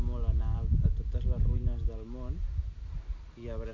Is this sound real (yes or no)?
yes